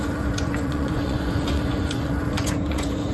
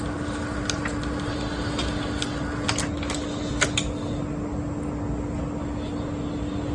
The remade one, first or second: first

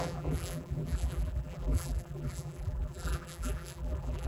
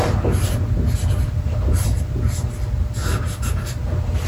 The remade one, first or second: first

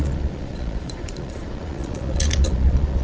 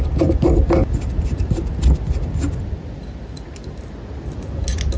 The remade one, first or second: first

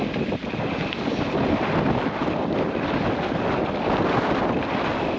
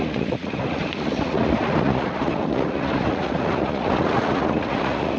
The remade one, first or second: second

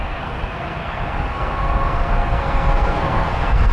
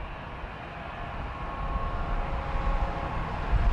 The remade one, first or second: first